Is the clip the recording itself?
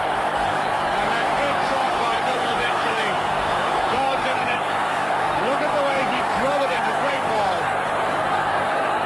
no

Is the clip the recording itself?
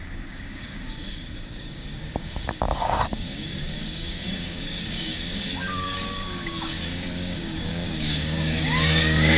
no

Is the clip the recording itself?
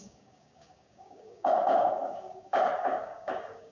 no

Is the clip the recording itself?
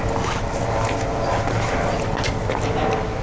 yes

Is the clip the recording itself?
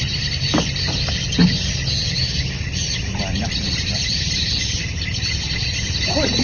yes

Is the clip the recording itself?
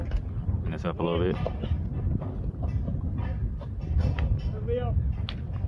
yes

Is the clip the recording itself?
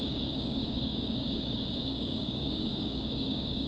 no